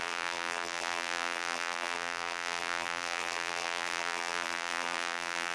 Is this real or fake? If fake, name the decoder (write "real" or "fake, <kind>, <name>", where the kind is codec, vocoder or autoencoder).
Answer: fake, vocoder, BigVGAN v2